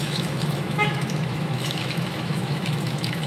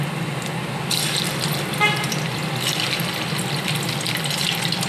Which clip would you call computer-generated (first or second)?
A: first